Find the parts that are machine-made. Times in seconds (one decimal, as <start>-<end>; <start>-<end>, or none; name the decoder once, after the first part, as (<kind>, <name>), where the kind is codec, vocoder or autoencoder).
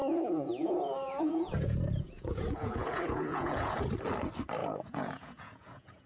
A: 0.0-3.7 (vocoder, Vocos); 4.6-6.1